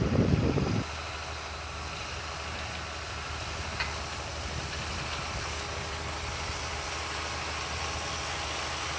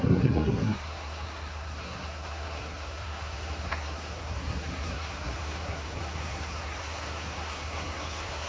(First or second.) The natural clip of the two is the first